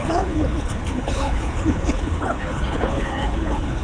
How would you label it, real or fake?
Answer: fake